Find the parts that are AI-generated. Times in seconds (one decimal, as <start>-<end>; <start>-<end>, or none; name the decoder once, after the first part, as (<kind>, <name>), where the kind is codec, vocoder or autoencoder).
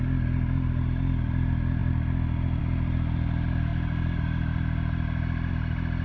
none